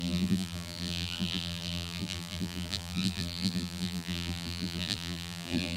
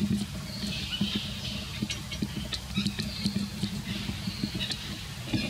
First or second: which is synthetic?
first